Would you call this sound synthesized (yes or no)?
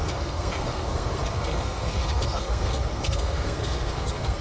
yes